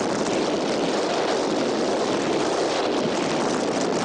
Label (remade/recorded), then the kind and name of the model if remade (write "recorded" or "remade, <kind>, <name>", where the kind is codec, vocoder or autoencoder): recorded